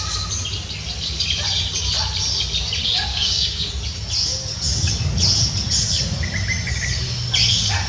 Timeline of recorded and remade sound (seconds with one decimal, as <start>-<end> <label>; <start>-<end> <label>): 0.0-3.1 recorded; 3.1-3.7 remade; 3.7-7.9 recorded